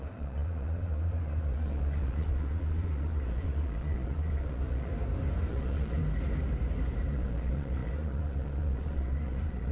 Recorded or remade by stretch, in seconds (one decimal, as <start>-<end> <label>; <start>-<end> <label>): 0.0-4.9 remade; 4.9-5.5 recorded; 5.5-6.0 remade; 6.0-7.1 recorded; 7.1-9.7 remade